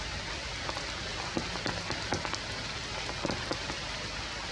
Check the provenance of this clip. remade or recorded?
recorded